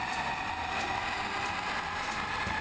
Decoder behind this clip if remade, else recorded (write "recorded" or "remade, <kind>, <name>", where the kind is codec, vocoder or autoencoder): recorded